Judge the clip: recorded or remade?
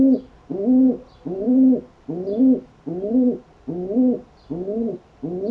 recorded